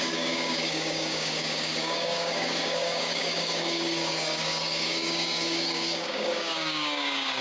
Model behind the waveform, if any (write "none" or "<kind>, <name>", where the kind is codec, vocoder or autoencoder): codec, DAC